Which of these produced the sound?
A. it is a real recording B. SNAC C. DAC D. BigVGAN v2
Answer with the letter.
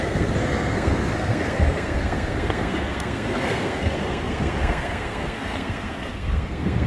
B